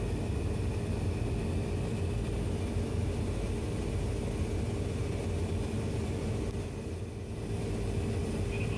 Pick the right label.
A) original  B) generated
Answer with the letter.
A